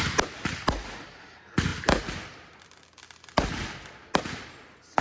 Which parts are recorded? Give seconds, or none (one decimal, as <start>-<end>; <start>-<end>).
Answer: 0.0-5.0